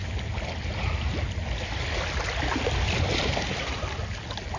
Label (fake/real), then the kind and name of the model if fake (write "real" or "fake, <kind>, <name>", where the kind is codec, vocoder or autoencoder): real